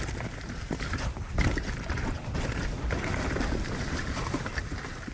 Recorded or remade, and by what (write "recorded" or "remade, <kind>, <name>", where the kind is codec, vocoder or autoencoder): remade, vocoder, BigVGAN v2